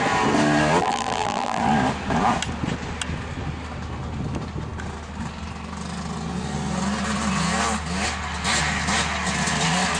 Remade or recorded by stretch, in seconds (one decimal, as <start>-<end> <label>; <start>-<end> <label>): 0.0-0.8 recorded; 0.8-1.6 remade; 1.6-10.0 recorded